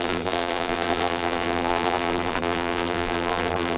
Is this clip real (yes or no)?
no